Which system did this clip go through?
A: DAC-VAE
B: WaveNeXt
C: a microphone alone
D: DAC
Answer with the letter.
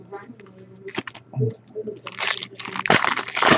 C